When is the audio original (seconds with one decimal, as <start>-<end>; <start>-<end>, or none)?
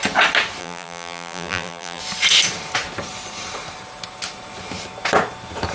0.0-0.6; 2.0-5.7